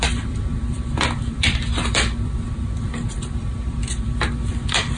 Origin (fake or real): fake